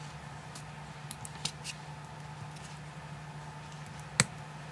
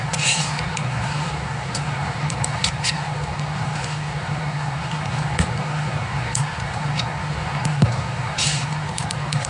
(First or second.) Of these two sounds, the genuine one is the first